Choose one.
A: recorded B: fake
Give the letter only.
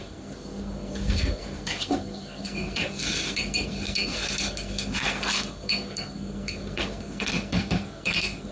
B